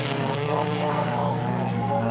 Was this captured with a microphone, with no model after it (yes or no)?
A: no